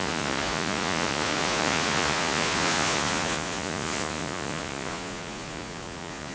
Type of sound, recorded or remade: remade